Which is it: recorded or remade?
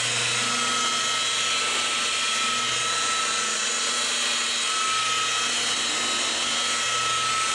recorded